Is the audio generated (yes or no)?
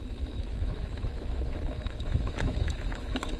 yes